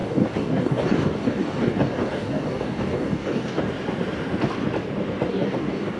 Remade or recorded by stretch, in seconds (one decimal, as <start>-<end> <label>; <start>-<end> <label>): 0.0-3.6 remade; 3.6-5.3 recorded; 5.3-6.0 remade